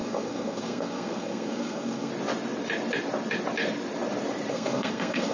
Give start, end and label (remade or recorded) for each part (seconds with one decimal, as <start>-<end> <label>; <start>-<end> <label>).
0.0-2.1 remade; 2.1-4.5 recorded; 4.5-5.3 remade